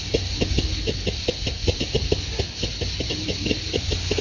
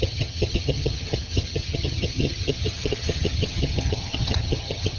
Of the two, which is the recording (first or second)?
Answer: first